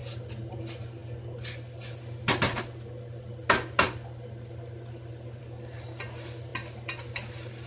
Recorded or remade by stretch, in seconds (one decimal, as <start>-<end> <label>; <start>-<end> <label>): 0.0-7.7 recorded